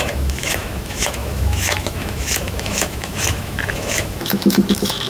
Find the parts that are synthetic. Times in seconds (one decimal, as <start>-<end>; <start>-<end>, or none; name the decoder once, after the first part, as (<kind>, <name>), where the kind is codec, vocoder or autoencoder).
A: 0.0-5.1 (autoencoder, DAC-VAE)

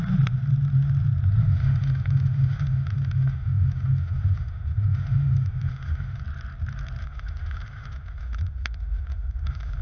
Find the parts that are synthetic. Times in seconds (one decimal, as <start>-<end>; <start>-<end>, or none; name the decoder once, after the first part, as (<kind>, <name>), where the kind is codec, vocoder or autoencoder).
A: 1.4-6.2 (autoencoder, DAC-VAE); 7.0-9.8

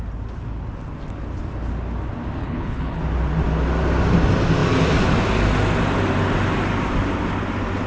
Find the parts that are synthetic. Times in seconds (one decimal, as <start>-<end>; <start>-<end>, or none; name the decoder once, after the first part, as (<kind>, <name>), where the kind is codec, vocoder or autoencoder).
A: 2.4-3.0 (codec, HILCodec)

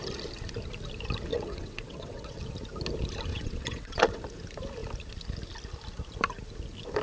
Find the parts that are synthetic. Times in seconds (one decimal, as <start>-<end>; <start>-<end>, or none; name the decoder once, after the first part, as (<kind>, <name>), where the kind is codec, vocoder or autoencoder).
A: 1.3-2.4 (vocoder, WaveNeXt); 3.3-4.2

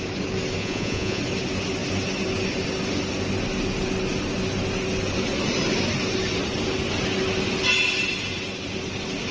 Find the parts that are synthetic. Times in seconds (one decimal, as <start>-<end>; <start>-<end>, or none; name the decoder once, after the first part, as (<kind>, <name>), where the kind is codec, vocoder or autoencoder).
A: 0.6-1.2 (vocoder, Vocos)